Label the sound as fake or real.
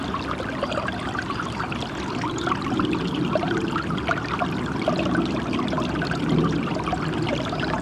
real